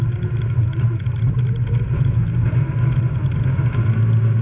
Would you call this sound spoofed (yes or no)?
no